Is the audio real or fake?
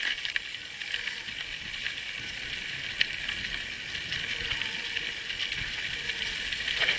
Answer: real